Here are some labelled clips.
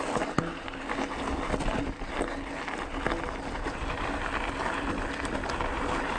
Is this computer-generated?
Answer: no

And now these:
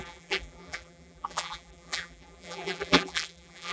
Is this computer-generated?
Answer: yes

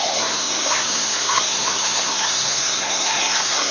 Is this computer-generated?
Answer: yes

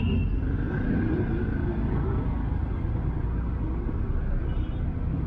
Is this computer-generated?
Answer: no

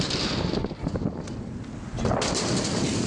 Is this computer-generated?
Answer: no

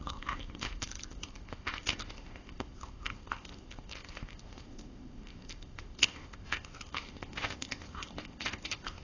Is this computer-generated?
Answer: yes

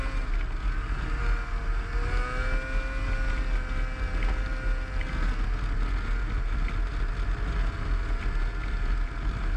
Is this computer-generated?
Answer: no